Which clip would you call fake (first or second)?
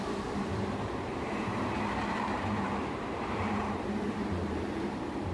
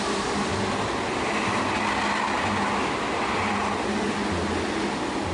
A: first